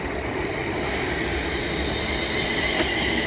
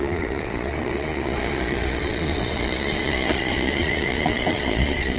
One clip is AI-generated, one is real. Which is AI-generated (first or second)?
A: second